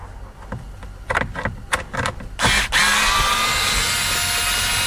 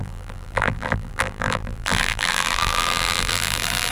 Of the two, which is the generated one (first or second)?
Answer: second